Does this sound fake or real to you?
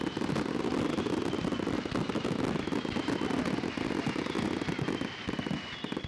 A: real